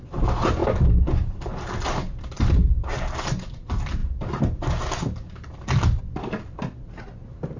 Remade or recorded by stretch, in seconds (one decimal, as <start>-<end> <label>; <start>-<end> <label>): 0.0-7.6 recorded